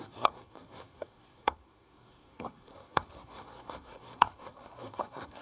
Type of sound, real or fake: fake